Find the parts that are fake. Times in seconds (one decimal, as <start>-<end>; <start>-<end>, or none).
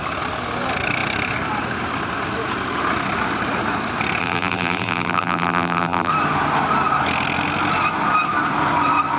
4.2-6.1